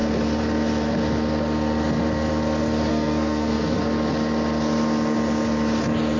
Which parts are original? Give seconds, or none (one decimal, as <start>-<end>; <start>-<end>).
0.0-2.9; 3.8-6.2